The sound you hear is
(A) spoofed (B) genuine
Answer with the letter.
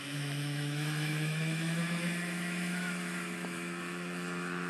A